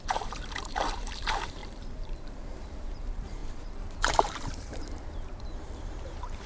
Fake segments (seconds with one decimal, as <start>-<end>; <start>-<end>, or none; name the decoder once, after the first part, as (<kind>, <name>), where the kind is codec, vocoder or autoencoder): 0.0-6.5 (vocoder, BigVGAN v2)